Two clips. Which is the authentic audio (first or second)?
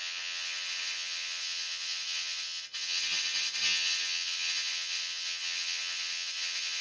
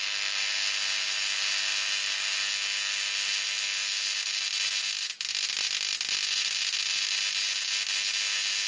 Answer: second